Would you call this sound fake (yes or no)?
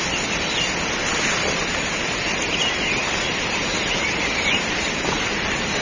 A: no